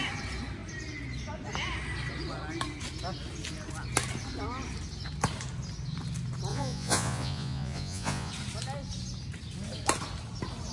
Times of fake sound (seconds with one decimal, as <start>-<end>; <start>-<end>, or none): 6.5-8.3